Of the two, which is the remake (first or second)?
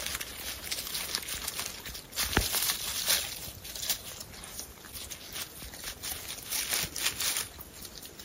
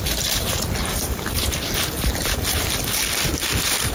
second